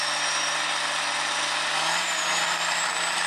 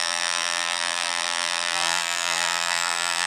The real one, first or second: first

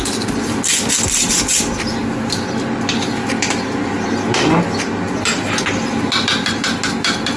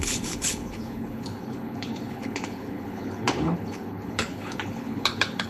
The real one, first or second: first